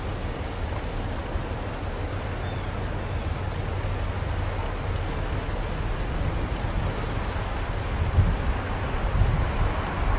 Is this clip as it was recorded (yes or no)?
yes